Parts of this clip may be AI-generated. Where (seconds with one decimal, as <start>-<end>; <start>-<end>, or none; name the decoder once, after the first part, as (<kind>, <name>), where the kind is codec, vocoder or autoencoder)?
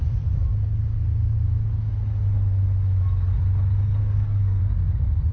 4.0-4.6 (codec, SNAC)